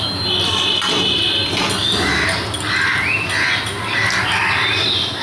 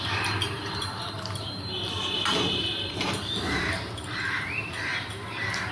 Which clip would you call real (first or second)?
first